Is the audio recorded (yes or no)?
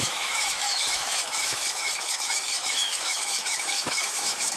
no